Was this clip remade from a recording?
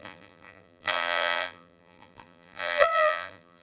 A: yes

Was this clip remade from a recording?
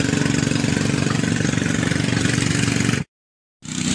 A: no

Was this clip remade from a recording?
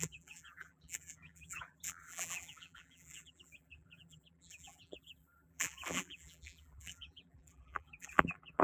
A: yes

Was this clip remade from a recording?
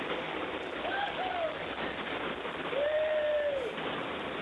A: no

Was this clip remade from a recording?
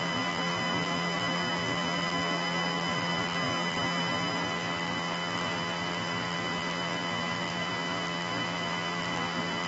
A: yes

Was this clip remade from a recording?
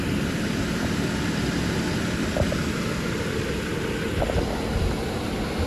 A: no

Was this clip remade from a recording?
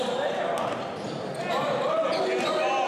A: no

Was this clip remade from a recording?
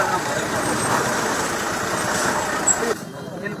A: yes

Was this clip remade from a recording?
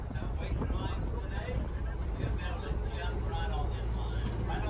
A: no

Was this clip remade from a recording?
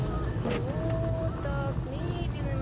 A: no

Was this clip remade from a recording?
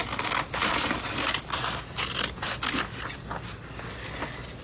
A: no